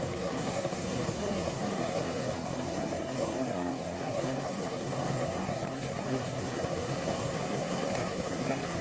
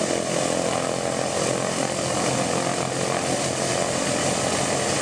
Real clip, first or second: second